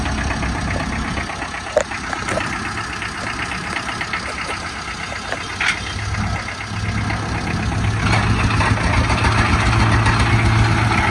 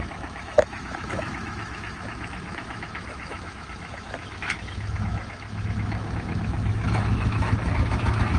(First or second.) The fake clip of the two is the second